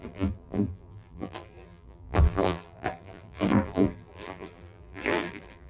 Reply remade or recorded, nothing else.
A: remade